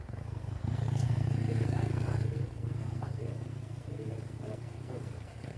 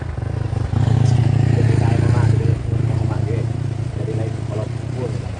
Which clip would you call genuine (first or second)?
second